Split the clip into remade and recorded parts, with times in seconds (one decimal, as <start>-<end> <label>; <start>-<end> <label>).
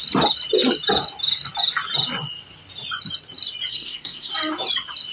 0.0-3.7 recorded; 3.7-4.3 remade; 4.3-5.1 recorded